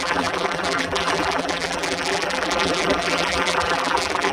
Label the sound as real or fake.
fake